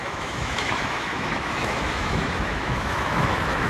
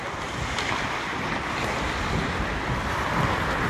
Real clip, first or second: second